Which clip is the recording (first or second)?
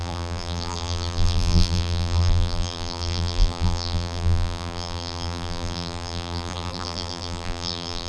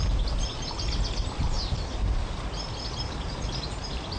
second